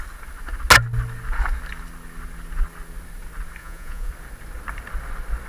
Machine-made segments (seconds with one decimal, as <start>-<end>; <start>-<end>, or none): 3.6-4.1